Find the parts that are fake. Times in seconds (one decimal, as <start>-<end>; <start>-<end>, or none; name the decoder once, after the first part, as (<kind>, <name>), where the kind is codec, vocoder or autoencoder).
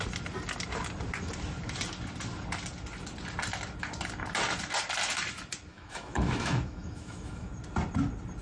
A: 5.7-7.5 (autoencoder, DAC-VAE)